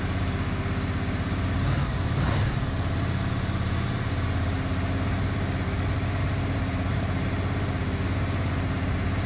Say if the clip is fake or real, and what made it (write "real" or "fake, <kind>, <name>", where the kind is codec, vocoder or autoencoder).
real